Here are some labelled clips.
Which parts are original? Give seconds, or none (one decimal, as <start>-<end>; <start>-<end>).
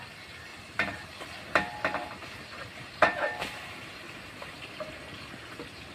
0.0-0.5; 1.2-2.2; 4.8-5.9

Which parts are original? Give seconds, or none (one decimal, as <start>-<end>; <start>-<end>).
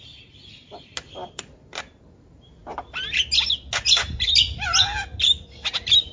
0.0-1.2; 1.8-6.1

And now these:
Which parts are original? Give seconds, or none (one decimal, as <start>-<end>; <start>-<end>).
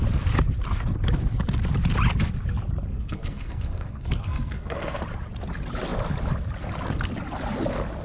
0.0-2.9; 5.0-8.0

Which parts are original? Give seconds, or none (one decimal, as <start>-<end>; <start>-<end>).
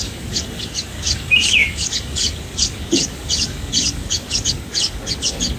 none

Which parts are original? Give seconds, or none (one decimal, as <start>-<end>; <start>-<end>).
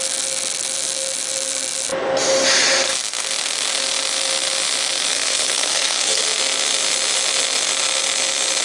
0.0-5.1; 6.2-8.6